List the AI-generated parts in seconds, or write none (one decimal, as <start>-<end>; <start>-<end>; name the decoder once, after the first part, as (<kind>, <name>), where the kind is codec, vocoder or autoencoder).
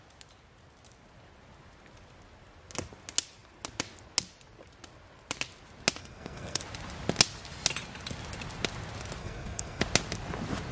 6.0-6.6 (codec, SNAC); 9.2-9.8